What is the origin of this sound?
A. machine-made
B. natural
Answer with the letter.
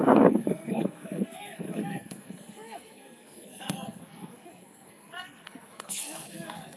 A